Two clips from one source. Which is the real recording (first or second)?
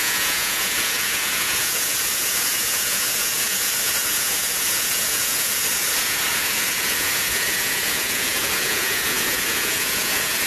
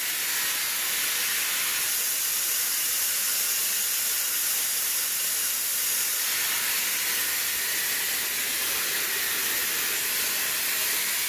second